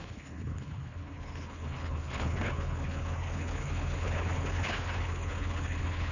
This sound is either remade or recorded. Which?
remade